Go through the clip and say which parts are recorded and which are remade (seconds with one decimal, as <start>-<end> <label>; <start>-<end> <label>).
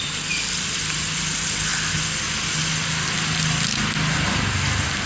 0.0-5.1 recorded